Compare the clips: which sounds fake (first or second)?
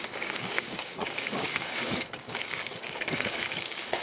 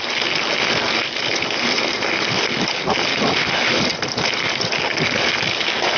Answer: first